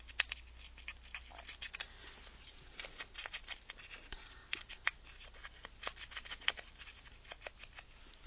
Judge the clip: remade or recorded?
recorded